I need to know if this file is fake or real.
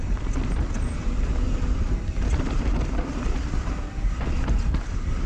real